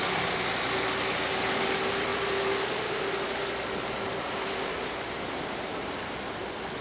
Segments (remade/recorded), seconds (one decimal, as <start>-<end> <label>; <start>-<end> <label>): 0.0-6.8 recorded